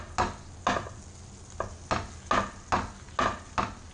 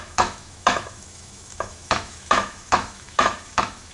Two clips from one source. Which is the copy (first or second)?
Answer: second